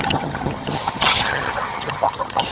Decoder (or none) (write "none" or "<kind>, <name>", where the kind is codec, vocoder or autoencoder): vocoder, HiFi-GAN